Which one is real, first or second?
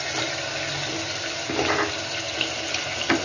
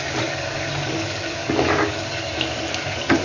first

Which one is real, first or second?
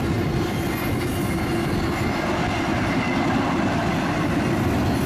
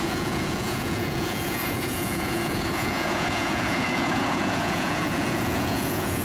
first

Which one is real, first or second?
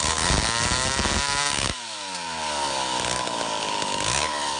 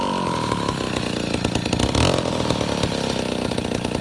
second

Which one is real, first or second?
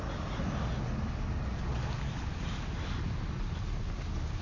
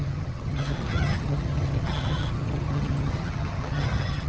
first